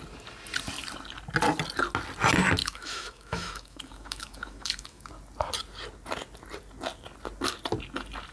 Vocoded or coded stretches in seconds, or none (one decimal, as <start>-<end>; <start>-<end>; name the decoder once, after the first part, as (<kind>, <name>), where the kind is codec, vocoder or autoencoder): 2.6-5.1 (autoencoder, DAC-VAE)